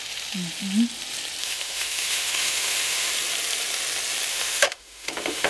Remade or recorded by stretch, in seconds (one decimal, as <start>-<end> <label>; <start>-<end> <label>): 0.0-1.4 recorded; 1.4-3.1 remade; 3.1-4.3 recorded; 4.3-5.5 remade